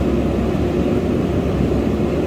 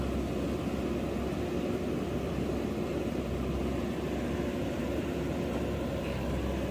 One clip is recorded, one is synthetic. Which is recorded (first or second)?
second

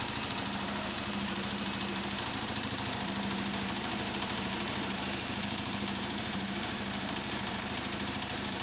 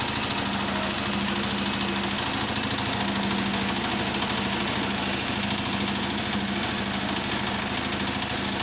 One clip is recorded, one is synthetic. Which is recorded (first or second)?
second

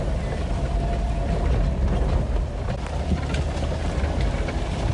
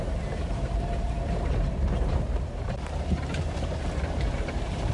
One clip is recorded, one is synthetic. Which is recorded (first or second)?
first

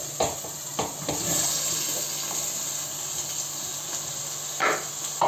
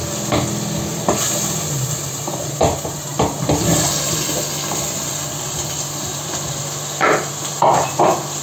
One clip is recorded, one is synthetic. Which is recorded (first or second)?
first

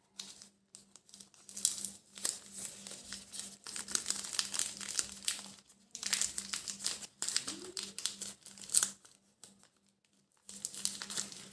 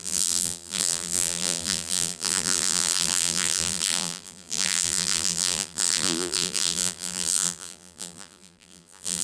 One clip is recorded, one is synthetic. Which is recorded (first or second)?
first